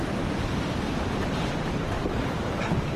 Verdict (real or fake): fake